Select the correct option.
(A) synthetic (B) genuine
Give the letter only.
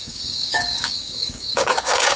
A